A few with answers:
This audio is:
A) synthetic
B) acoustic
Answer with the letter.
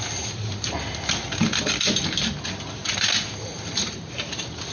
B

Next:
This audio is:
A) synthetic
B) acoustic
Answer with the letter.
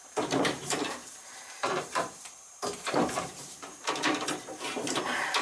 A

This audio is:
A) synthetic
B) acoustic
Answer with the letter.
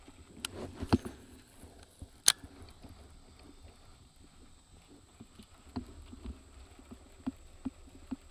B